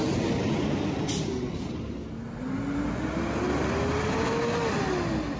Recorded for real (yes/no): yes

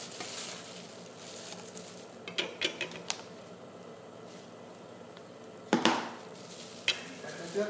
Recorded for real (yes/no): yes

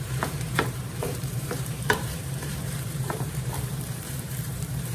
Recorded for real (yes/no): no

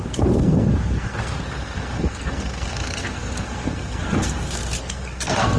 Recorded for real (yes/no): no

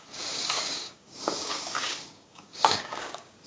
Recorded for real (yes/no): no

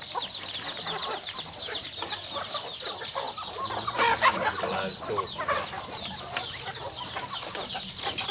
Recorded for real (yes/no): yes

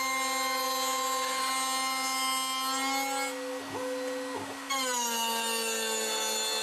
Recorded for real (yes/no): yes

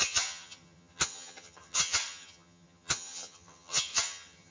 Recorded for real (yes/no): no